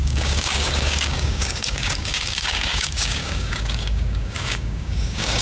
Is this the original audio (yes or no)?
no